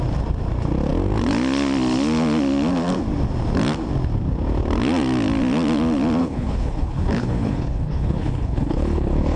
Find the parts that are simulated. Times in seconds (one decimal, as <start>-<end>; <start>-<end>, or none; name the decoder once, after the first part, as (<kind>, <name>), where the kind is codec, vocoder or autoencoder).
6.2-9.4 (codec, HILCodec)